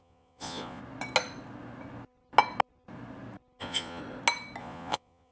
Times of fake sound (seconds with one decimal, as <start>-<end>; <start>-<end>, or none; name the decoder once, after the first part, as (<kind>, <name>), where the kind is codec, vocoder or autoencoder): 0.0-0.8 (vocoder, Vocos); 3.6-4.0; 4.6-5.3